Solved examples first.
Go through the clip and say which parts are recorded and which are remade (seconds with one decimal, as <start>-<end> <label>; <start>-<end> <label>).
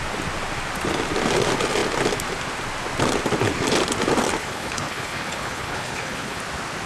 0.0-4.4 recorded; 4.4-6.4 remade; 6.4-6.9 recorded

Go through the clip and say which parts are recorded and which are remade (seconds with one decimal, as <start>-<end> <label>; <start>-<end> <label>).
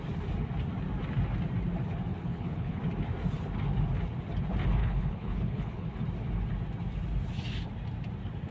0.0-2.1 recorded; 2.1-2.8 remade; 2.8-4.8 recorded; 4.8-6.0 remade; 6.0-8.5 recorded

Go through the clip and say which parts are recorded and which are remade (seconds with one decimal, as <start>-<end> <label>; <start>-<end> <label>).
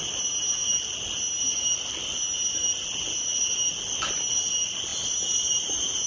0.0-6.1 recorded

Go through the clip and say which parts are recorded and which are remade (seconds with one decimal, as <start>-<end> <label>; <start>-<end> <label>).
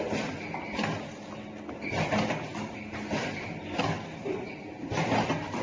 0.0-5.6 recorded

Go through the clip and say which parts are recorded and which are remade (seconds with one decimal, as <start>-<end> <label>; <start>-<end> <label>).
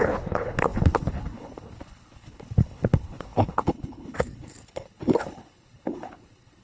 0.0-6.6 remade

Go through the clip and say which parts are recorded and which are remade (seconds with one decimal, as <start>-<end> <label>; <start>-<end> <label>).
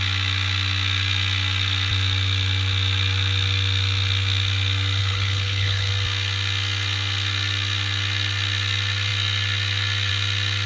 0.0-5.0 recorded; 5.0-5.9 remade; 5.9-10.7 recorded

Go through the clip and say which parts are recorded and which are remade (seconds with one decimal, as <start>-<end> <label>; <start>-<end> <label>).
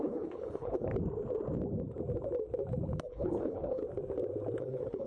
0.0-0.9 remade; 0.9-3.0 recorded; 3.0-3.8 remade; 3.8-4.6 recorded; 4.6-5.1 remade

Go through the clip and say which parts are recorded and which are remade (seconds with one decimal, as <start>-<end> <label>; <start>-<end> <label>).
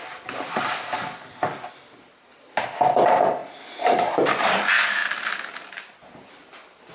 0.0-6.9 recorded